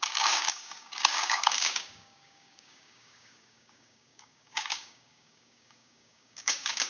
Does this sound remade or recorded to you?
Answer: remade